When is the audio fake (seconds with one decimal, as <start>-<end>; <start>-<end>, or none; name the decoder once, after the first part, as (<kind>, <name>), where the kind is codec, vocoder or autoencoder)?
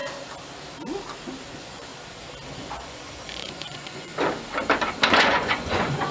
1.5-1.9 (vocoder, Vocos); 2.6-4.1; 5.1-6.1